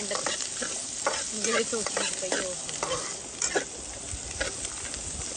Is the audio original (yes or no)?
yes